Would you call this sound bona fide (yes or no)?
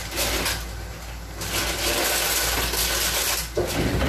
yes